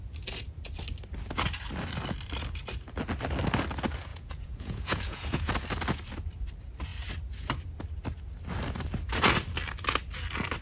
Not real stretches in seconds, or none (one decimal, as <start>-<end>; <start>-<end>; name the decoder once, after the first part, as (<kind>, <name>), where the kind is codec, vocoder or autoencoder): 4.1-5.5 (vocoder, Vocos)